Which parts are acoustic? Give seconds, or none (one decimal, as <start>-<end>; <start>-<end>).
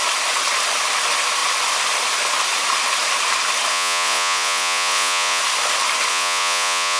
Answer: 0.0-3.7; 5.4-6.1